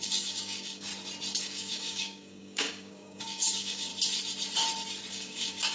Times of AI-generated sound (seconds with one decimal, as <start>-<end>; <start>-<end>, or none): 0.0-0.9; 1.4-3.9; 5.1-5.7